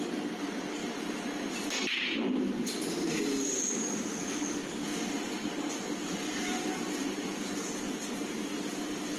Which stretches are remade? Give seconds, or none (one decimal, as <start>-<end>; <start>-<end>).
0.8-3.2; 4.9-7.4